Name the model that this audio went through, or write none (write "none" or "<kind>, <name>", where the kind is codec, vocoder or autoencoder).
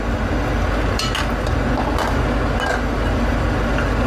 none